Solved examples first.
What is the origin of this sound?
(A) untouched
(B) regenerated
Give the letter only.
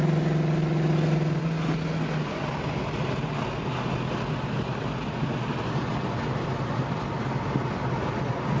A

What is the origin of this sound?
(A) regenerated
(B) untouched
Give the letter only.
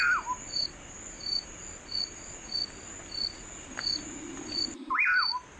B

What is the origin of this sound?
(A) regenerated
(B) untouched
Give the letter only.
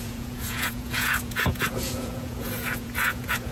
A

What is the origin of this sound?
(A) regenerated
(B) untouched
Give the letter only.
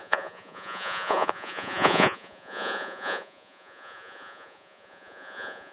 A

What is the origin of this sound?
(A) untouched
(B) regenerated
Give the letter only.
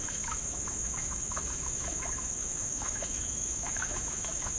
B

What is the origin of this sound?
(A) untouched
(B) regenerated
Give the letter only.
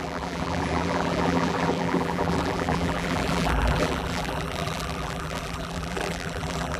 B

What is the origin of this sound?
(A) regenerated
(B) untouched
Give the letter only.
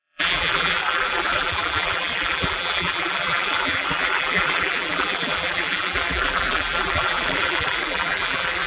A